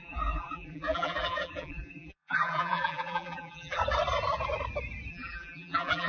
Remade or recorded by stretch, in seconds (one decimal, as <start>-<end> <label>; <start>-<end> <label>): 0.0-3.8 remade; 3.8-5.1 recorded; 5.1-6.1 remade